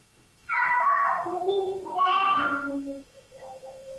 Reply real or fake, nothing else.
fake